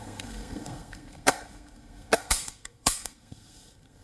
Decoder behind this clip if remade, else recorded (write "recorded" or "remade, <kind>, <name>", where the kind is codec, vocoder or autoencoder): remade, codec, SNAC